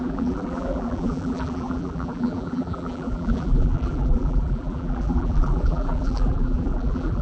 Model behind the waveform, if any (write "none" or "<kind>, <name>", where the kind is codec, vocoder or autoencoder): vocoder, BigVGAN v2